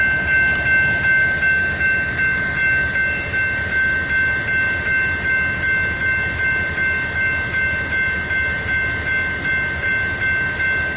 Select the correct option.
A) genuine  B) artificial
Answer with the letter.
A